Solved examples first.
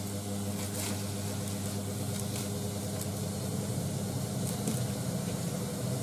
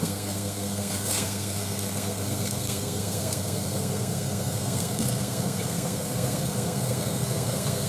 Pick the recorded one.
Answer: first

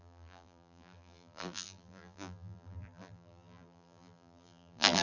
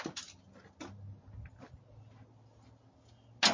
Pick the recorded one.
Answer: second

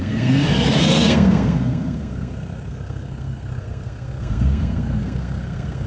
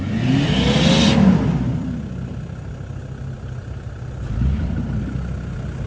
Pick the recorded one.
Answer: second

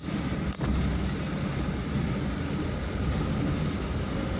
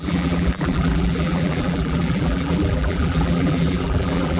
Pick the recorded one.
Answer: first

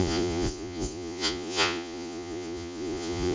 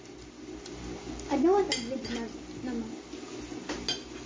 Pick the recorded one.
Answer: second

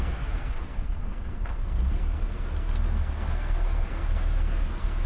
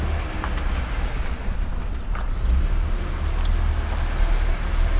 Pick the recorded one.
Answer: second